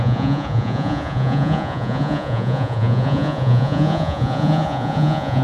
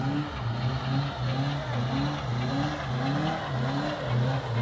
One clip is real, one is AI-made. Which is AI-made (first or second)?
first